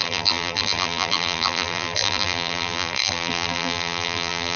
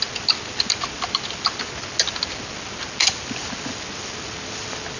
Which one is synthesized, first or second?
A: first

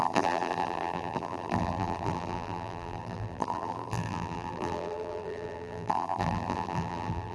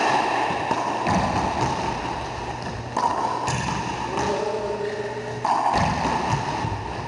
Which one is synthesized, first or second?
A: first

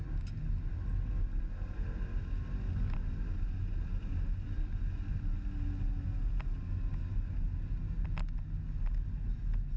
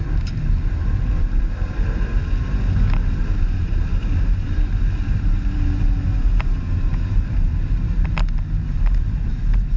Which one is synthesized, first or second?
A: second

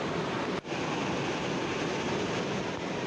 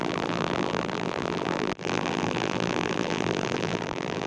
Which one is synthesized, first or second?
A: second